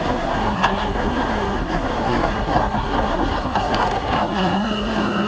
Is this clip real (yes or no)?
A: no